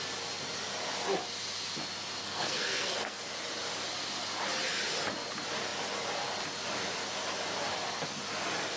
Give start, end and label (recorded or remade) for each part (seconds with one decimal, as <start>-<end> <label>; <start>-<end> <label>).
0.0-2.2 recorded; 2.2-3.2 remade; 3.2-8.8 recorded